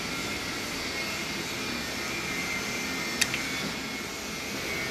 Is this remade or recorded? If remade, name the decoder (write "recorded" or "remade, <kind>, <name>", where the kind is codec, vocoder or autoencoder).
recorded